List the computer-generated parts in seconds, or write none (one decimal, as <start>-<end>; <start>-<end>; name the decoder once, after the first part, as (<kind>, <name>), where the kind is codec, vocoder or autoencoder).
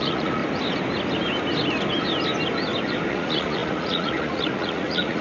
0.0-0.4 (vocoder, Vocos); 3.1-5.2